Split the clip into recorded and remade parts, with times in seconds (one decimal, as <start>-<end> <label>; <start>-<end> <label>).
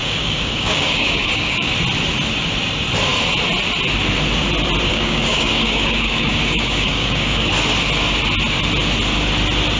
0.0-1.7 remade; 1.7-4.9 recorded; 4.9-7.5 remade; 7.5-9.8 recorded